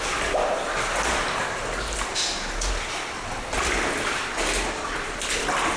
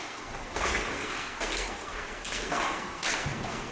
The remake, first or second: second